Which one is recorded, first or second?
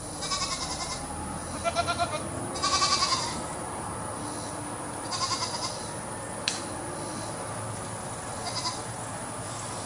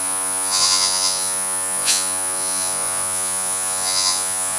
first